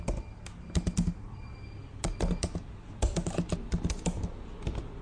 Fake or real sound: real